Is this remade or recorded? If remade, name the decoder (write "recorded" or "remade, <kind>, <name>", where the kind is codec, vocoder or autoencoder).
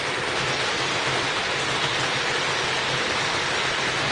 recorded